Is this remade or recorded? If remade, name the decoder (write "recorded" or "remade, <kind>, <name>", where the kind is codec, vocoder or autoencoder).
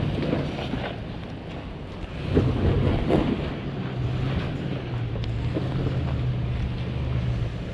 recorded